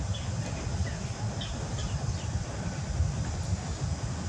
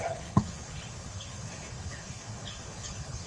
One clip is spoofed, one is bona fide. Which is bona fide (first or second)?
first